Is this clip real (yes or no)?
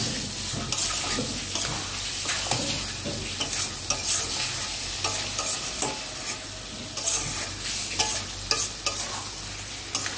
yes